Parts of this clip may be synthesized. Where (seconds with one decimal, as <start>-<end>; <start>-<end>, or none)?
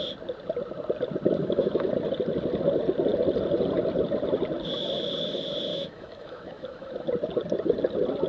1.4-1.9; 5.7-7.1